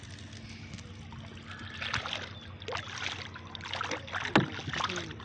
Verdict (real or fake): real